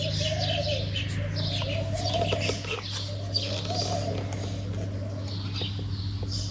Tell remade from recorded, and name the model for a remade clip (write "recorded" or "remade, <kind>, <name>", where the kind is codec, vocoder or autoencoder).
recorded